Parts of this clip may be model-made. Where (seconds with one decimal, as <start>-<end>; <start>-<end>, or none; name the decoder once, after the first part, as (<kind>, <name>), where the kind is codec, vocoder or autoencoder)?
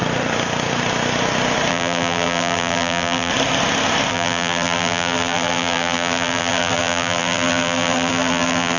1.7-3.3 (vocoder, BigVGAN v2); 4.1-8.8